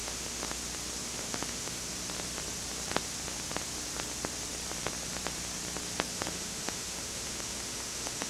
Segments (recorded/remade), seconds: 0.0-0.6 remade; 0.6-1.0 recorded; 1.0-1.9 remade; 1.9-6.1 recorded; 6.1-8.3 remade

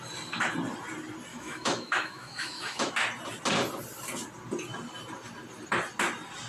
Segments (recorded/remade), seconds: 0.0-1.3 recorded; 1.3-2.9 remade; 2.9-6.5 recorded

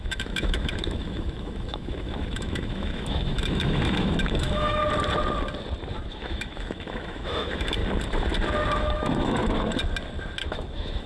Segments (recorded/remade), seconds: 0.0-4.8 remade; 4.8-6.0 recorded; 6.0-7.8 remade; 7.8-8.8 recorded; 8.8-9.4 remade; 9.4-10.4 recorded; 10.4-11.1 remade

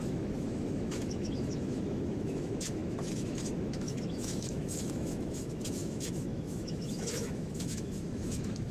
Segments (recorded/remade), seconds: 0.0-8.7 remade

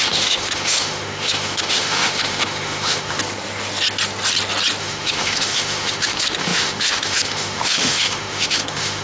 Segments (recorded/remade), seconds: 0.0-3.2 remade; 3.2-4.8 recorded; 4.8-9.0 remade

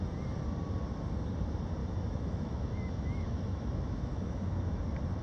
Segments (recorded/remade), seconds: 0.0-1.8 recorded; 1.8-4.8 remade; 4.8-5.2 recorded